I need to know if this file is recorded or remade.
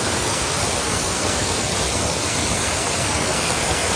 remade